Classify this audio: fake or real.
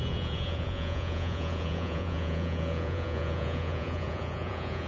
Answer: fake